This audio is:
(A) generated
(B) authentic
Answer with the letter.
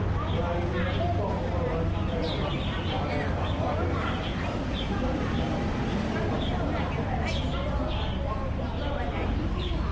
B